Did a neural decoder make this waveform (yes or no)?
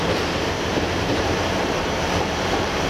yes